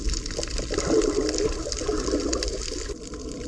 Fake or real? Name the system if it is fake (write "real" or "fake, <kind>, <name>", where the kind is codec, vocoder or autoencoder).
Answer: real